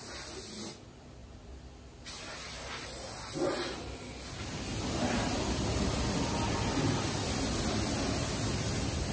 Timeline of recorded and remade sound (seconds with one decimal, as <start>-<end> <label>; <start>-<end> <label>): 0.0-9.1 recorded